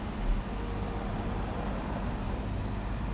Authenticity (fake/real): real